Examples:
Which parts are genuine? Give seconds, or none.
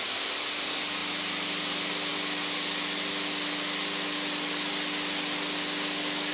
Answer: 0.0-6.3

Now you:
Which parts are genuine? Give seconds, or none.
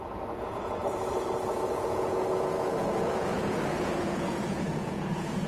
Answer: 0.8-1.5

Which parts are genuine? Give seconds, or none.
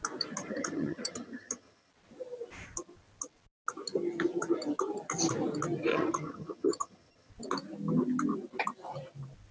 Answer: 0.0-0.4; 1.9-5.9; 7.3-9.5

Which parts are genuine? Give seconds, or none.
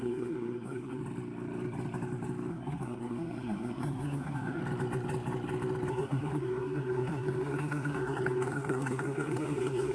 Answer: 1.0-2.5; 4.6-5.9